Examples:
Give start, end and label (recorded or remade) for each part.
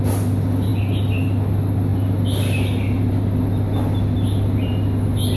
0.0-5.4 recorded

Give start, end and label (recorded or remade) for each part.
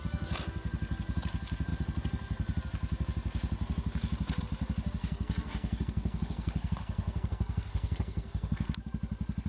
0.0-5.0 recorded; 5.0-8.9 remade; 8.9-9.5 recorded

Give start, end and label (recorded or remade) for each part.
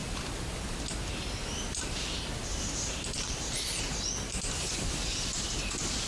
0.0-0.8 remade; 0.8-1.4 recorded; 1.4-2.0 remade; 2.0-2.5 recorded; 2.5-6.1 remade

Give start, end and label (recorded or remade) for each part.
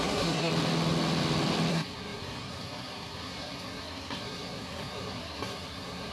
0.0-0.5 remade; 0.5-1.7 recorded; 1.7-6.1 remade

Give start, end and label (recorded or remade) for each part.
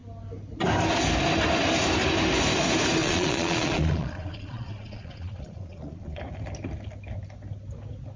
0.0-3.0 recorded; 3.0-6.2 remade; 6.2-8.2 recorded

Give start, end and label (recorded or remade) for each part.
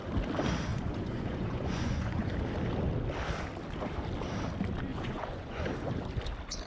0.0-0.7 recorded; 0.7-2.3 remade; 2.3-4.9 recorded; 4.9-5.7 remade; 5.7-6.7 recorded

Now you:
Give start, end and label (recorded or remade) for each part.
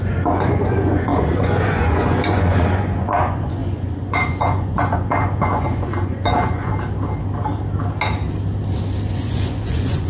0.0-6.7 remade; 6.7-9.1 recorded; 9.1-10.1 remade